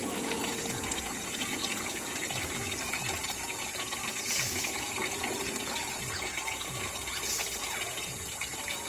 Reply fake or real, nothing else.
fake